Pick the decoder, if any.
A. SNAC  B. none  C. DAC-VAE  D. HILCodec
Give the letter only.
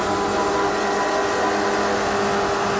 B